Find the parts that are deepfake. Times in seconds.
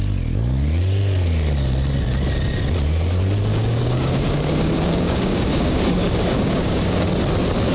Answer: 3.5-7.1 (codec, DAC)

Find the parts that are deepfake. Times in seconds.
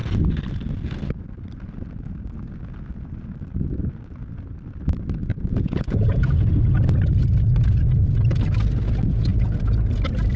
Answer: 5.3-6.6 (vocoder, Vocos)